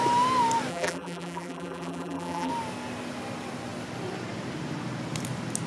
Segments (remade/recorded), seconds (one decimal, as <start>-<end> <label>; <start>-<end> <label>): 0.0-0.7 recorded; 0.7-2.5 remade; 2.5-5.7 recorded